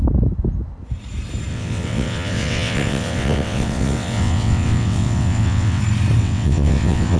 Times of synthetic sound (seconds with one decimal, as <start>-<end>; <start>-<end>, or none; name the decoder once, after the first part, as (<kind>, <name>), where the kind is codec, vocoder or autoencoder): 1.5-5.8 (vocoder, WaveNeXt); 6.2-7.2